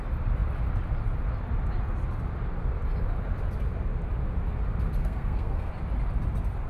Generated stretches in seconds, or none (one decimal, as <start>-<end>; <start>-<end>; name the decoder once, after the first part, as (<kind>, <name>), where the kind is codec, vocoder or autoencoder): 5.0-5.7 (codec, SNAC)